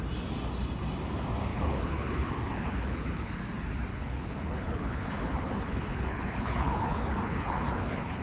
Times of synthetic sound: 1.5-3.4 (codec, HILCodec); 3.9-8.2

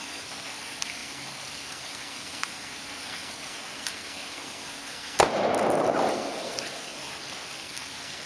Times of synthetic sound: 0.0-5.3 (codec, SNAC); 6.1-8.3